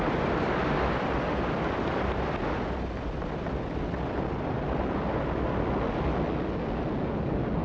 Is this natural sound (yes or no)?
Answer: yes